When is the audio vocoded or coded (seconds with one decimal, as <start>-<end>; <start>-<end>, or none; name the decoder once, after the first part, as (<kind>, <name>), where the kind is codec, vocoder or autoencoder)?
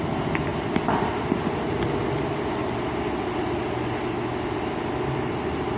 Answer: none